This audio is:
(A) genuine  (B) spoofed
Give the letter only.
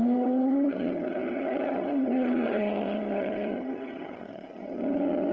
B